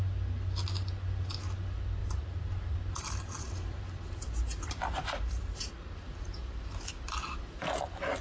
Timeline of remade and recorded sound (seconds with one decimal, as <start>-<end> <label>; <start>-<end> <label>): 0.0-2.0 recorded; 2.0-6.9 remade; 6.9-8.2 recorded